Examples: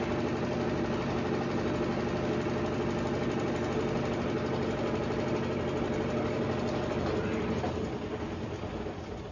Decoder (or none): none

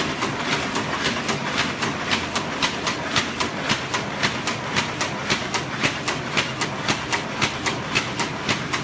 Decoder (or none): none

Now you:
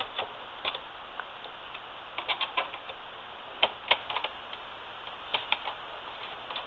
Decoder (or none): none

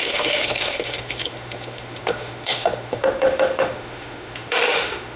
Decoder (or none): autoencoder, DAC-VAE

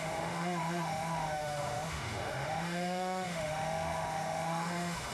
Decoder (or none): autoencoder, DAC-VAE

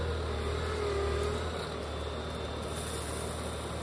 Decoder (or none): none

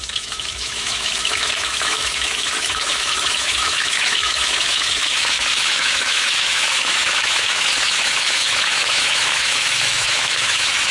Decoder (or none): autoencoder, DAC-VAE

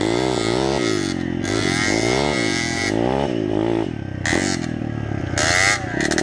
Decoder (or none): none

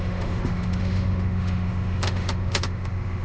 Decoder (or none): autoencoder, DAC-VAE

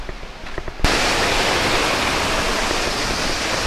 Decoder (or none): none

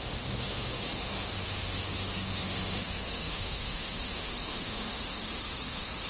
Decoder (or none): autoencoder, DAC-VAE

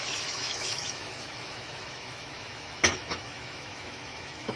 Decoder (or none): autoencoder, DAC-VAE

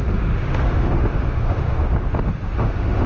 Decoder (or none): autoencoder, DAC-VAE